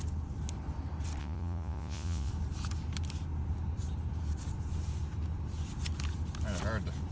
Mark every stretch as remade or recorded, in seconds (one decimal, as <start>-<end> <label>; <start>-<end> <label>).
0.0-1.2 recorded; 1.2-2.3 remade; 2.3-7.1 recorded